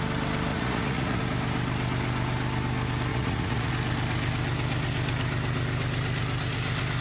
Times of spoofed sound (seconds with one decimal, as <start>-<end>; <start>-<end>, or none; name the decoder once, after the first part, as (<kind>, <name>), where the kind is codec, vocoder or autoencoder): 0.5-1.2 (vocoder, Vocos); 3.1-3.7